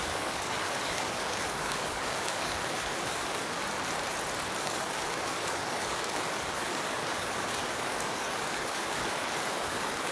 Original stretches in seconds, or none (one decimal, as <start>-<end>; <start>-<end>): 3.6-4.6